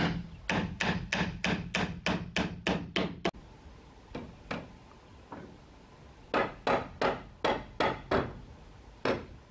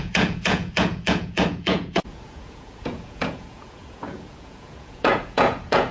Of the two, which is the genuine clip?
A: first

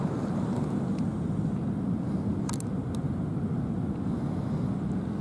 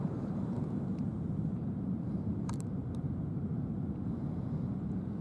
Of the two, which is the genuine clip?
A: first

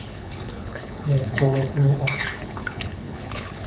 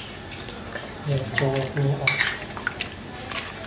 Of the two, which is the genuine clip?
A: second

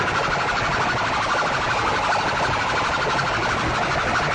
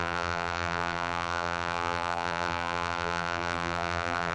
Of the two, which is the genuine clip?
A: first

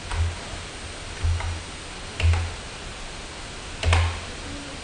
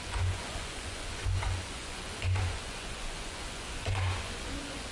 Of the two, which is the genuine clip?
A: first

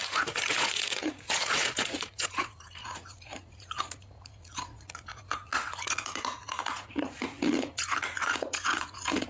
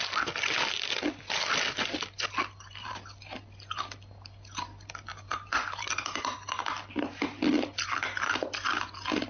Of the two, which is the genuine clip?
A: second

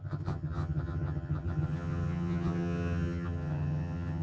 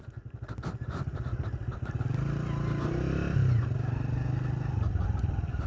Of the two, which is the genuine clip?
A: second